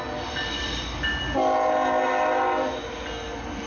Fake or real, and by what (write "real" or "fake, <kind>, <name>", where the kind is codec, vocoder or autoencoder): real